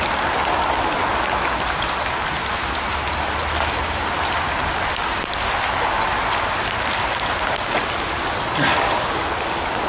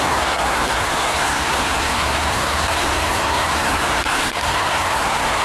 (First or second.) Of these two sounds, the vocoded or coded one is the second